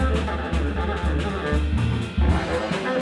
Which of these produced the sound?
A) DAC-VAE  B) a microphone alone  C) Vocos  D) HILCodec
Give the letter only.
B